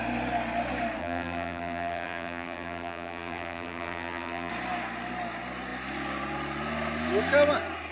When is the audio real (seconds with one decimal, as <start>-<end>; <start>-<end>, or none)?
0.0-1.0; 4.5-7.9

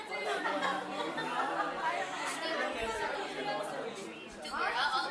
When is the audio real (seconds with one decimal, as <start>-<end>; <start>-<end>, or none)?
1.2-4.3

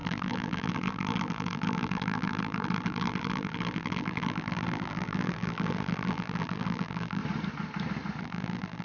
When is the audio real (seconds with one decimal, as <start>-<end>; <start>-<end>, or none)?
7.2-8.2

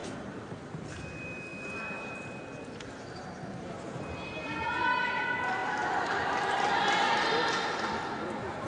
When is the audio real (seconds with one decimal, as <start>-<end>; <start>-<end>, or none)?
0.0-1.5; 2.9-5.6; 6.3-8.7

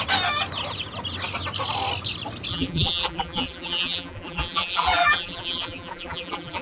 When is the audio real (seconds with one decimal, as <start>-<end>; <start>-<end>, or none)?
0.0-2.5

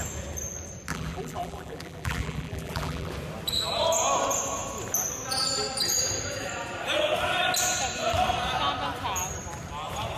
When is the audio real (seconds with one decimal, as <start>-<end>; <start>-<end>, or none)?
0.0-0.9; 3.1-10.2

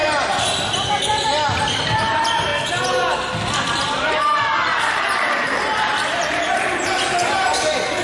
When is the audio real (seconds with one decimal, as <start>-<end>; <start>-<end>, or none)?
0.0-1.8; 2.5-3.8